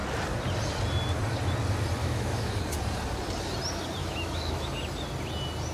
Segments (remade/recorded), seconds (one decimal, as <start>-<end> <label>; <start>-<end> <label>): 0.0-2.0 recorded; 2.0-2.5 remade; 2.5-4.0 recorded; 4.0-4.7 remade; 4.7-5.7 recorded